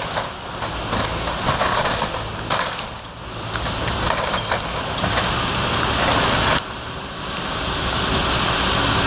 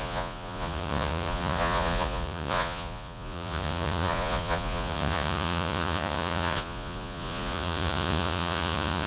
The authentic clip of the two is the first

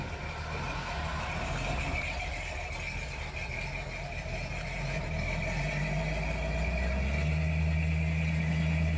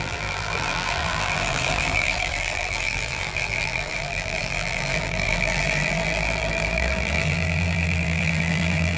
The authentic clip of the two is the first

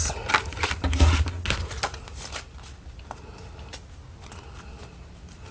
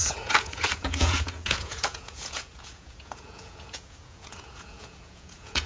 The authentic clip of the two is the first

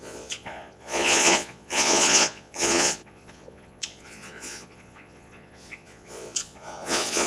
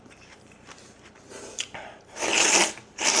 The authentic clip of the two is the second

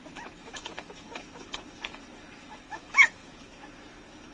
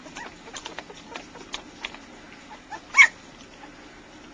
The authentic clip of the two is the second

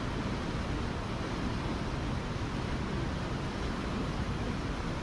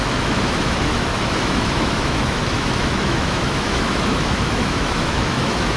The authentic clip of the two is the first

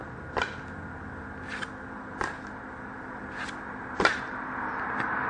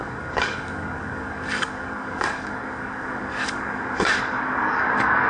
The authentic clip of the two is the first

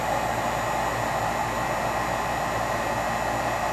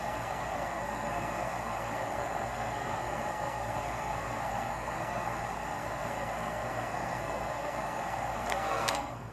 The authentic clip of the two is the first